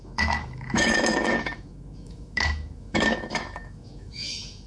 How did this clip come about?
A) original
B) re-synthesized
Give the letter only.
B